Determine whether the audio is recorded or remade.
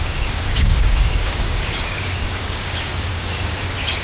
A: remade